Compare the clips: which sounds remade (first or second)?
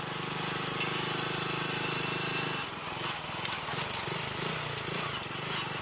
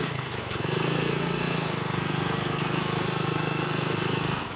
second